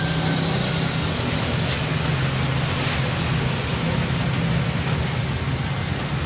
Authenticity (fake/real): real